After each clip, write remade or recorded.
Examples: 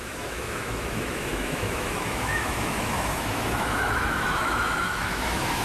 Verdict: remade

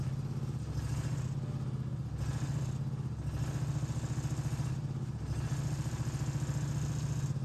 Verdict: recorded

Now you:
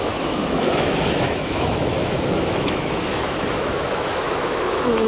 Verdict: remade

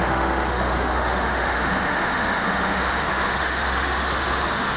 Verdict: remade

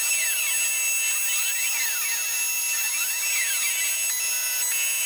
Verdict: recorded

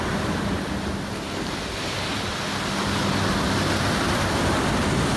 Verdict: recorded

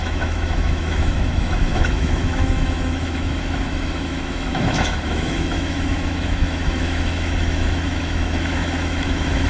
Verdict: remade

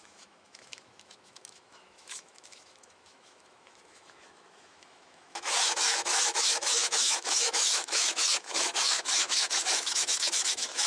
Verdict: remade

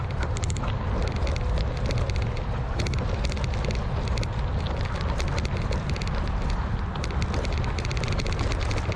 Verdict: recorded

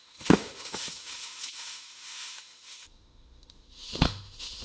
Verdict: remade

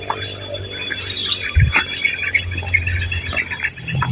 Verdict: recorded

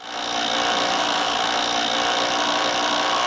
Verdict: recorded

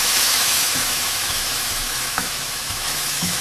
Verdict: remade